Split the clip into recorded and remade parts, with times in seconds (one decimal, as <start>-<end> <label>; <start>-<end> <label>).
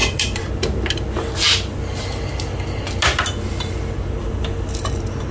0.0-5.3 recorded